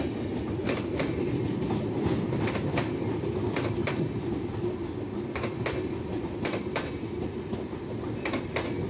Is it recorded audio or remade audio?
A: recorded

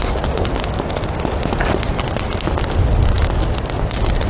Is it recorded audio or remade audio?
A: recorded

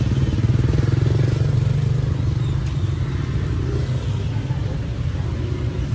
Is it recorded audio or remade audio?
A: recorded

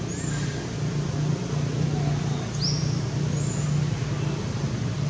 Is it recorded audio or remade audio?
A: recorded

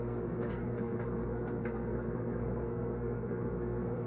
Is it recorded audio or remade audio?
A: remade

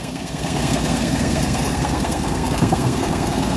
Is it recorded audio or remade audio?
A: remade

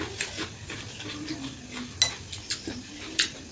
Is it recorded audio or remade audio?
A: recorded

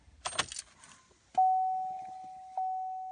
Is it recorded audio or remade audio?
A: recorded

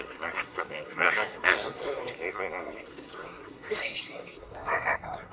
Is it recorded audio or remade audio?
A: remade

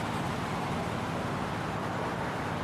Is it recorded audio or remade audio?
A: recorded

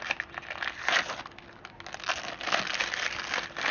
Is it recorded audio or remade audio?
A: recorded